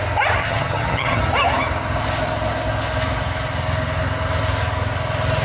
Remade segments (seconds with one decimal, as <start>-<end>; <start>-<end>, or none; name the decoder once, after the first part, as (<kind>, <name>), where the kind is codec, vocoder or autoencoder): 0.4-1.2 (vocoder, HiFi-GAN)